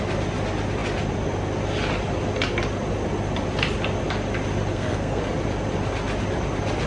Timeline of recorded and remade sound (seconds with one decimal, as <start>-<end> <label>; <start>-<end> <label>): 0.0-4.7 recorded; 4.7-5.2 remade; 5.2-6.9 recorded